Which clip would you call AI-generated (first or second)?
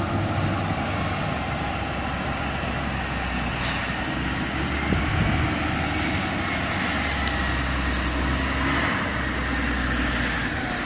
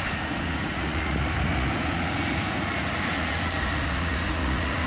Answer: second